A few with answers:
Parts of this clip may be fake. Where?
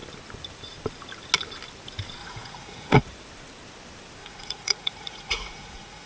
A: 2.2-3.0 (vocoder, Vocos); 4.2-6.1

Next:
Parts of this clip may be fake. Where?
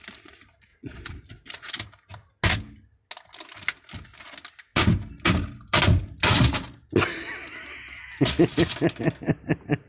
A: 0.7-1.8 (vocoder, Vocos)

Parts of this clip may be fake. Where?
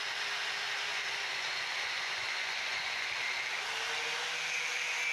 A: 0.9-3.1 (vocoder, Vocos)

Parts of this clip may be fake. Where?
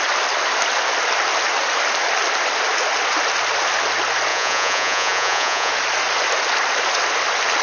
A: 4.3-5.7 (vocoder, Vocos)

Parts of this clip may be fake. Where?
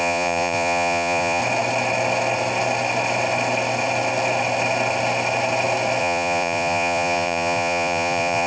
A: 0.0-1.4 (vocoder, Vocos); 6.0-8.5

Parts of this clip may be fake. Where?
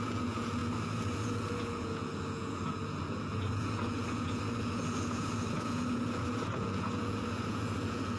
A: 0.0-8.2 (vocoder, Vocos)